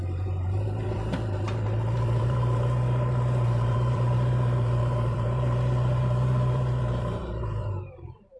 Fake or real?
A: fake